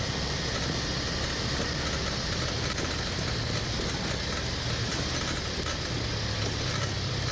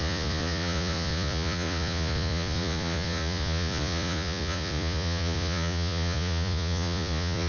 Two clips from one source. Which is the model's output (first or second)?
second